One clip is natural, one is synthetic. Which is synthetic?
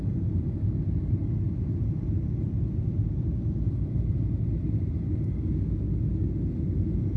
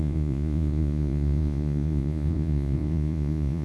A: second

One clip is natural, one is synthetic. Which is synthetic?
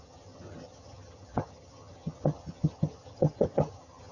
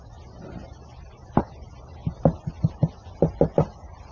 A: first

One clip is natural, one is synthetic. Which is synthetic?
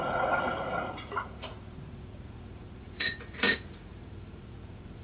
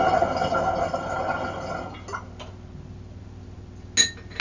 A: first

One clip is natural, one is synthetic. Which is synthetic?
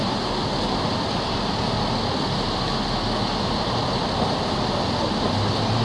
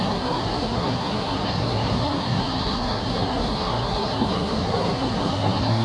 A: second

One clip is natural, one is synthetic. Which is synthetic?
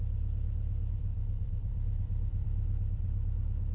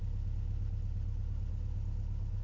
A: first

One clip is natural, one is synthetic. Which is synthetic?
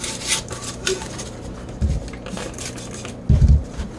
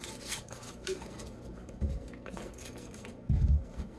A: second